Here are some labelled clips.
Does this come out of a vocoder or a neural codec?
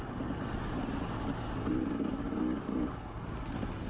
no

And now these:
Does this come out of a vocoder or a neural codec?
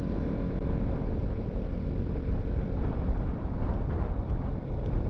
no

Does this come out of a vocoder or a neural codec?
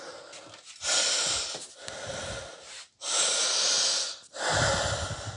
no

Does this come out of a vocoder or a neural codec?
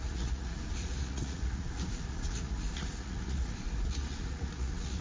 yes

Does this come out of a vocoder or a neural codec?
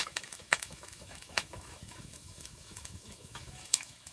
yes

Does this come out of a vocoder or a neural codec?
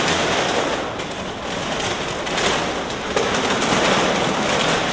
no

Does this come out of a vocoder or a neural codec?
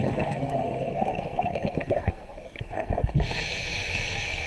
yes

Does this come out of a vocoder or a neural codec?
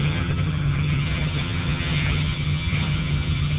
yes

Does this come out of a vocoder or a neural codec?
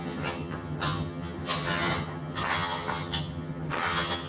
yes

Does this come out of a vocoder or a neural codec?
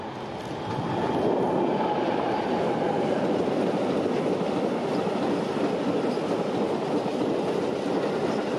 no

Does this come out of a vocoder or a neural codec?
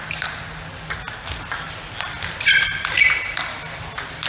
no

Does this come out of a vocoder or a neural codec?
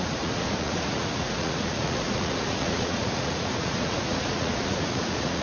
yes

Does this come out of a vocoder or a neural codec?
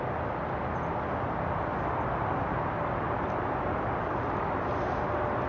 no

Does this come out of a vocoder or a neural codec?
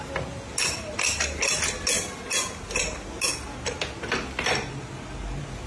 no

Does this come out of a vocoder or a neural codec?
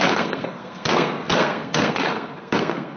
yes